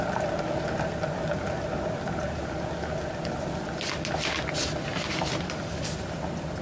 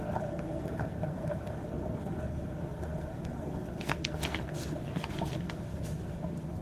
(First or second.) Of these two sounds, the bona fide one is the first